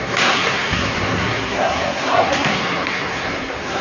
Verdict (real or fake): fake